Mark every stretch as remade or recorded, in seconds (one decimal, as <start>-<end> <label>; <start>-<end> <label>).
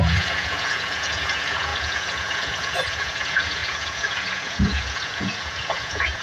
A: 0.0-6.2 remade